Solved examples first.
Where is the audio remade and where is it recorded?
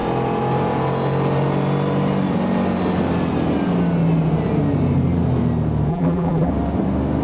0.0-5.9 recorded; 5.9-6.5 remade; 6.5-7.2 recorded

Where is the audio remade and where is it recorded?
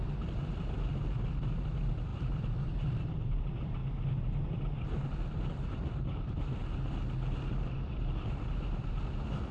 0.0-3.8 remade; 3.8-4.8 recorded; 4.8-6.6 remade; 6.6-8.9 recorded; 8.9-9.5 remade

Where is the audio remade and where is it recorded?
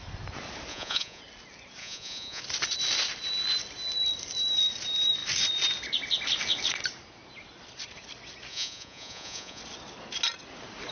0.0-0.7 recorded; 0.7-1.2 remade; 1.2-1.8 recorded; 1.8-2.4 remade; 2.4-8.5 recorded; 8.5-9.6 remade; 9.6-10.9 recorded